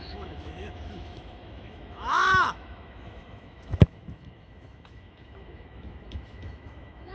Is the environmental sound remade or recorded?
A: remade